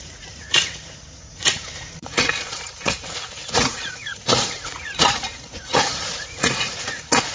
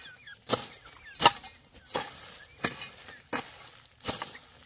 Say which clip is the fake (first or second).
first